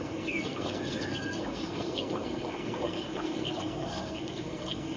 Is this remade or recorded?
remade